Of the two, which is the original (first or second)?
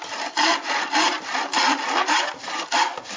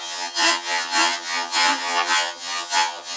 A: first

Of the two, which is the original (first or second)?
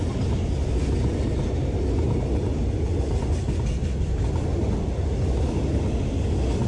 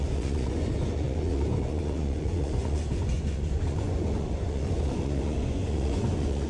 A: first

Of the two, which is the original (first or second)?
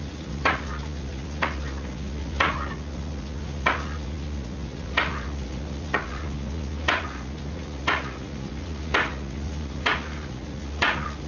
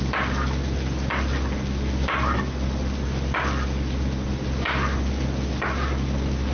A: second